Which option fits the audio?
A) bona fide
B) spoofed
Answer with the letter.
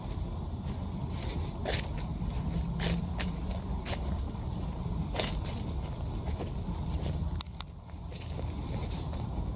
A